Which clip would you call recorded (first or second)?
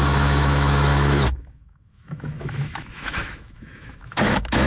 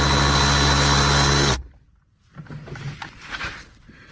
second